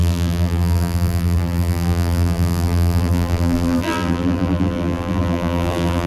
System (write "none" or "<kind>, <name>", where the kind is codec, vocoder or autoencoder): vocoder, BigVGAN v2